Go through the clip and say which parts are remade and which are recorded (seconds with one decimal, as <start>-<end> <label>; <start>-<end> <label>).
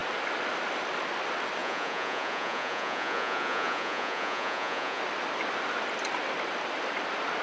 0.0-1.6 recorded; 1.6-5.0 remade; 5.0-7.4 recorded